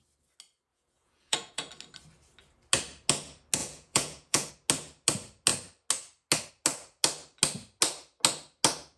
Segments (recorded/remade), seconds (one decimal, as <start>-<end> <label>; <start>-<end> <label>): 0.0-0.7 recorded; 0.7-1.7 remade; 1.7-3.6 recorded; 3.6-4.5 remade; 4.5-9.0 recorded